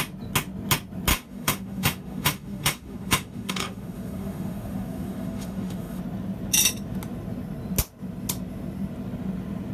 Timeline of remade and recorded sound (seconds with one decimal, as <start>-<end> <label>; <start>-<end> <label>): 0.0-1.1 recorded; 1.1-6.0 remade; 6.0-9.7 recorded